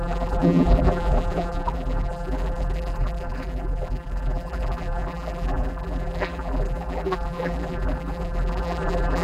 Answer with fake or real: fake